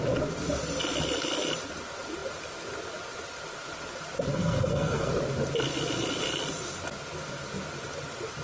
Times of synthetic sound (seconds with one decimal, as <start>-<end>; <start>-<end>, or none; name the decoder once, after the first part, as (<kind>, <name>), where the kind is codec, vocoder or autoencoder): 4.3-5.1 (codec, SNAC)